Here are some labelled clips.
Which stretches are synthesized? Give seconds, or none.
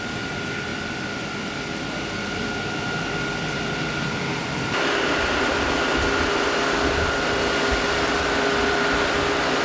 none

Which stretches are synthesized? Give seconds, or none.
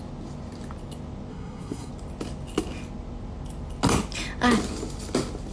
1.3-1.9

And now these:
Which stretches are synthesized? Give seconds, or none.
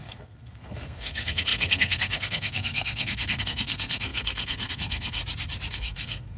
0.0-5.2; 5.7-6.4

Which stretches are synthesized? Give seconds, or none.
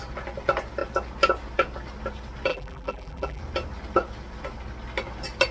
2.5-3.4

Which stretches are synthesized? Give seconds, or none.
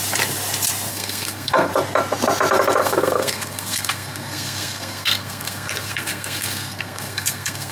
0.9-1.7; 2.8-7.7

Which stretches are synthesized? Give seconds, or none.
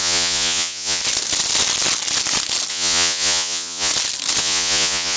0.0-1.0; 2.7-3.9; 4.4-5.2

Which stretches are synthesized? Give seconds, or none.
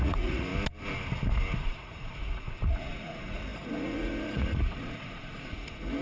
0.0-0.5; 1.6-6.0